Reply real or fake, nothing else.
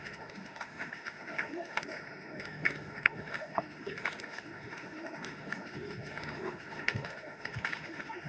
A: fake